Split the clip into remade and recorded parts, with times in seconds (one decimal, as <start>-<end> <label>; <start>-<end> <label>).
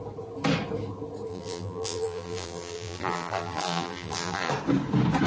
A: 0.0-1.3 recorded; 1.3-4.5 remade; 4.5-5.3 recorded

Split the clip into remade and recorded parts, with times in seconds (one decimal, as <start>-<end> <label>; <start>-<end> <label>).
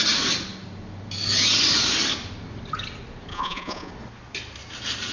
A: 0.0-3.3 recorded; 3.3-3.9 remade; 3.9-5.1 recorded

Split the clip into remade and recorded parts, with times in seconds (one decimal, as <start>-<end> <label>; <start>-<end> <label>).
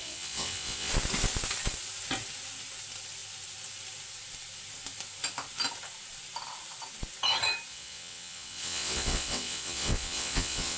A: 0.0-0.9 remade; 0.9-7.7 recorded; 7.7-10.8 remade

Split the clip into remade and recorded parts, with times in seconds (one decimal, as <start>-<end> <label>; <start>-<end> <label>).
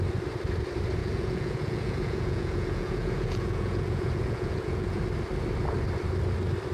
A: 0.0-1.0 recorded; 1.0-5.0 remade; 5.0-6.7 recorded